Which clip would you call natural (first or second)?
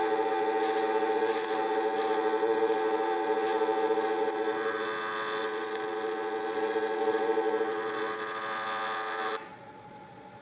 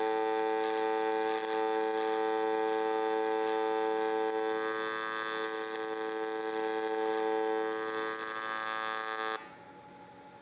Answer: second